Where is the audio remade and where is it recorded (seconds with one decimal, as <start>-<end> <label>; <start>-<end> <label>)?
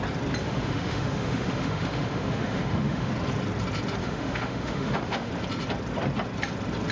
0.0-0.4 recorded; 0.4-3.1 remade; 3.1-4.0 recorded; 4.0-5.3 remade; 5.3-6.9 recorded